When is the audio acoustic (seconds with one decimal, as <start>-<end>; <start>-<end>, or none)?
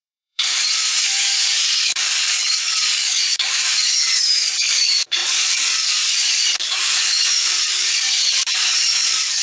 0.5-1.0